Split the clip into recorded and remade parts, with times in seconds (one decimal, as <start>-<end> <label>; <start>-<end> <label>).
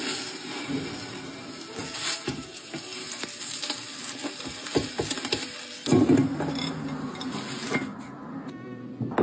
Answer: 0.0-9.2 recorded